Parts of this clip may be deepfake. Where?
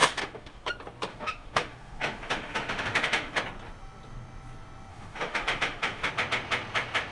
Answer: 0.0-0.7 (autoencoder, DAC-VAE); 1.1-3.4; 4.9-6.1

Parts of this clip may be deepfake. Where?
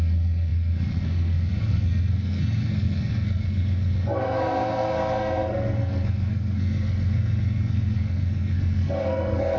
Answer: 0.0-9.6 (codec, SNAC)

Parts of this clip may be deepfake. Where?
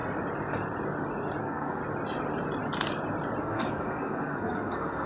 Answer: 1.4-1.8 (codec, SNAC); 3.4-5.1